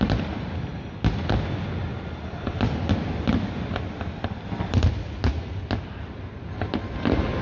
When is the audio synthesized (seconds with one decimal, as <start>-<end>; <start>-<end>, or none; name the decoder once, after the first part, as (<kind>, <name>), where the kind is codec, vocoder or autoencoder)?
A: none